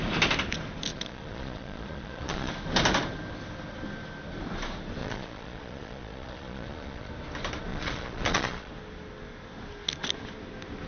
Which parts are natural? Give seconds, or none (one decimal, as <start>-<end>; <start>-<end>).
0.0-0.9; 2.5-5.0; 7.1-7.7; 8.7-10.9